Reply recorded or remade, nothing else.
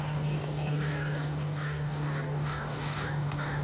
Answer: remade